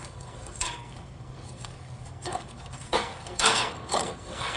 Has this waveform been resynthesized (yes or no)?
yes